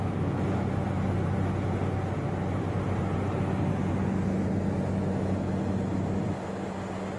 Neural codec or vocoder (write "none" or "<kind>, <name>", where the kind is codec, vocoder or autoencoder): none